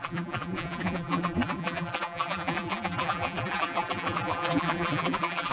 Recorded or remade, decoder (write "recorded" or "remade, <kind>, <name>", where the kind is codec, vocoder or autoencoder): remade, vocoder, BigVGAN v2